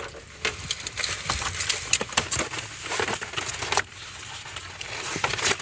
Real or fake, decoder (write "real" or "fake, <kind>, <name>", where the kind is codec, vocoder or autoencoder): real